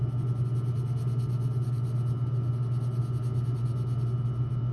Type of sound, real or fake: real